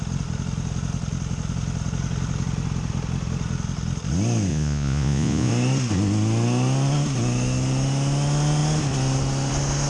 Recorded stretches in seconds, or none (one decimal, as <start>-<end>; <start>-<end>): 0.0-4.5; 5.5-9.9

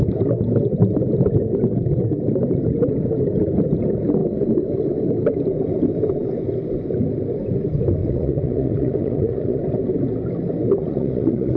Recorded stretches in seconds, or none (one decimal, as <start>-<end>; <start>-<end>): 0.0-8.0; 9.6-10.8

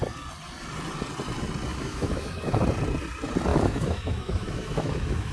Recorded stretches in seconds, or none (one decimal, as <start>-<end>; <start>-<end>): 0.0-1.7; 2.6-3.5

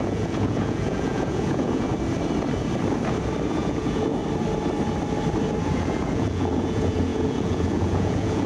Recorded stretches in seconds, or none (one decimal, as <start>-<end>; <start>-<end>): 1.9-3.5; 4.2-5.6